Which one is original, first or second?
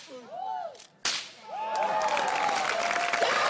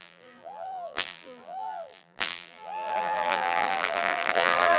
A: first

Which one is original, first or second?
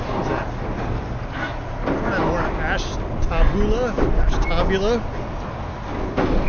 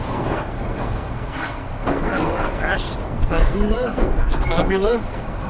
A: first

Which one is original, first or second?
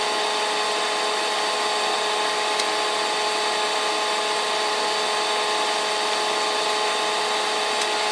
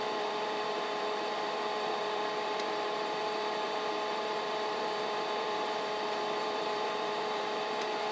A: first